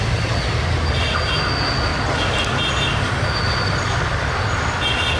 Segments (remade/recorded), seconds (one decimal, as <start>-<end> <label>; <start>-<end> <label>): 0.0-5.2 recorded